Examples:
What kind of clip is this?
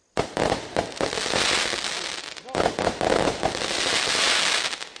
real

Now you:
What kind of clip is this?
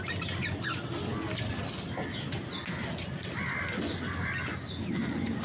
real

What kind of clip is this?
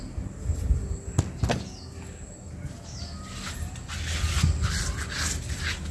real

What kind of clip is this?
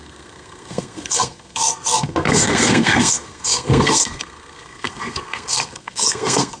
fake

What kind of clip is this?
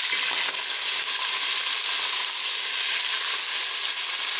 real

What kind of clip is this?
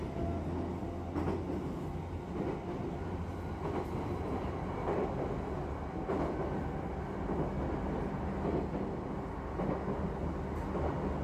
real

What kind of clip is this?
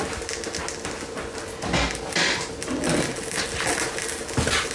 real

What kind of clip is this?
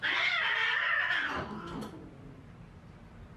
real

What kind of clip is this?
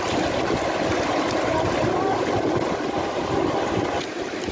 real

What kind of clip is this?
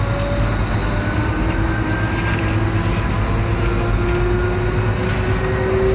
real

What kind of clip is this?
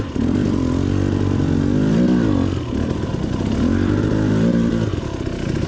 real